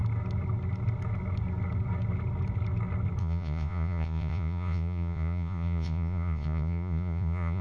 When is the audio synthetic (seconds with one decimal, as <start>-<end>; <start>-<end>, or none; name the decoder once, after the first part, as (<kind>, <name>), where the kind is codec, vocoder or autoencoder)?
3.2-7.6 (vocoder, Vocos)